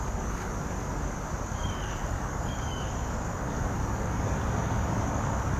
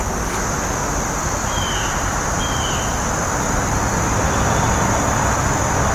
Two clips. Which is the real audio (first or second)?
second